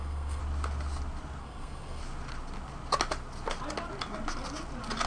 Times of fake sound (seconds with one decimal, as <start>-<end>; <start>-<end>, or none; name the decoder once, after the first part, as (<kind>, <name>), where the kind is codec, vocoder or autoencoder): 0.0-0.4 (codec, SNAC); 1.4-2.0